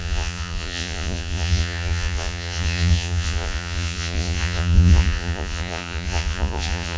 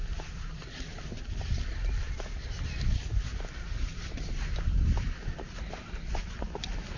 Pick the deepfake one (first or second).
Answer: first